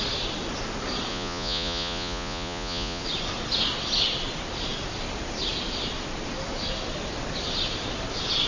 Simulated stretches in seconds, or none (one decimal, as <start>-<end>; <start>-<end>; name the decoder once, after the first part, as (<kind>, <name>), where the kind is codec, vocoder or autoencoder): 1.1-3.0 (vocoder, Vocos)